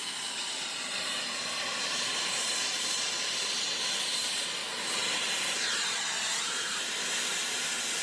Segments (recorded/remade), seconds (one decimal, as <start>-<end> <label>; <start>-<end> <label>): 0.0-8.0 remade